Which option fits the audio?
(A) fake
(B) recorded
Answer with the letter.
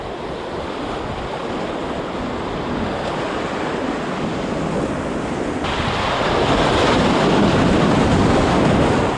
B